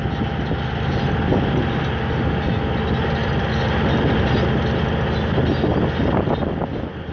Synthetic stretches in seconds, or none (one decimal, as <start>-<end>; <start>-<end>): none